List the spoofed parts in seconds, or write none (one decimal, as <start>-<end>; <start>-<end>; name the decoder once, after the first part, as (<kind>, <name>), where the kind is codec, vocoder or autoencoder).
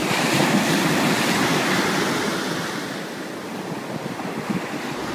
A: 0.0-1.0 (vocoder, BigVGAN v2)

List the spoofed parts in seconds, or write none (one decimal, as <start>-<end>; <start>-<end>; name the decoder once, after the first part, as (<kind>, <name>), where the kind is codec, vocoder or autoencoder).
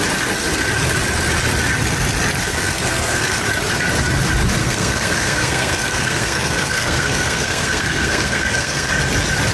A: 2.4-3.4 (codec, SNAC); 4.6-8.9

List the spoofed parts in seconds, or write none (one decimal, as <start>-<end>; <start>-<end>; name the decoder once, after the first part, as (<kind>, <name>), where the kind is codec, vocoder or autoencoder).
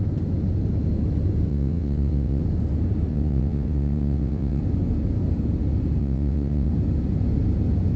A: 1.5-2.4 (vocoder, WaveNeXt); 3.1-4.6; 6.0-6.7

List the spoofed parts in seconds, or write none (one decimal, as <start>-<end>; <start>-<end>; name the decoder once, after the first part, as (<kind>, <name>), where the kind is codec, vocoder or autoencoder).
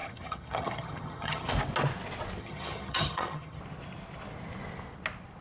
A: 0.0-1.5 (vocoder, HiFi-GAN); 2.4-3.6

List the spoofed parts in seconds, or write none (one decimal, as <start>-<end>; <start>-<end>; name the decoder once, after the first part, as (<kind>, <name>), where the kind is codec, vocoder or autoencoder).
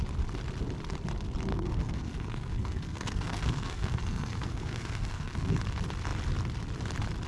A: 1.5-5.6 (codec, SNAC)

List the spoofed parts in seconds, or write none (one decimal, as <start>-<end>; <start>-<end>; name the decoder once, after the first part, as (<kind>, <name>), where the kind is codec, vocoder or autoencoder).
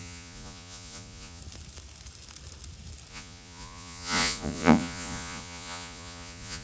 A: 0.0-1.4 (vocoder, Vocos); 3.1-6.6